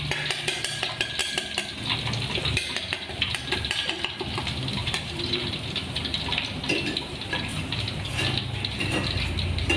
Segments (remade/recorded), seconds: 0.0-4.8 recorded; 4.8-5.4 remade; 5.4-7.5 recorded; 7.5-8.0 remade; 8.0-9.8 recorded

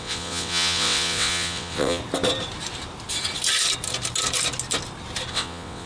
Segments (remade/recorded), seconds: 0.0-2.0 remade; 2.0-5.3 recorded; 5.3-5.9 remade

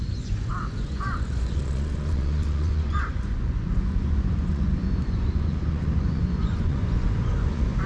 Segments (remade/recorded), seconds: 0.0-7.9 remade

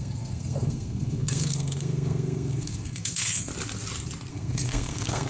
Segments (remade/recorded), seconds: 0.0-3.5 remade; 3.5-4.3 recorded; 4.3-5.3 remade